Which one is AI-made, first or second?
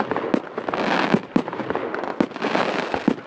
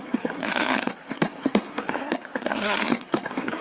second